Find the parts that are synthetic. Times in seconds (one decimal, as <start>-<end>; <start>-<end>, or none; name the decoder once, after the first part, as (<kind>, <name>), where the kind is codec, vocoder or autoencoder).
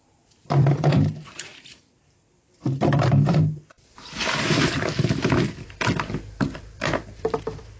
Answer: 0.0-7.8 (vocoder, BigVGAN v2)